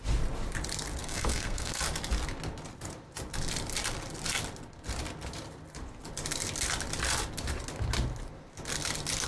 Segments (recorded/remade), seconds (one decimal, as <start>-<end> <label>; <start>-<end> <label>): 0.0-1.0 recorded; 1.0-1.8 remade; 1.8-9.3 recorded